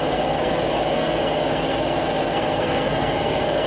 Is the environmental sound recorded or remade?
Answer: remade